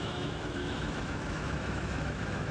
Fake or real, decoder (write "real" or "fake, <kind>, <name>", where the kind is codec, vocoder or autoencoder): fake, autoencoder, DAC-VAE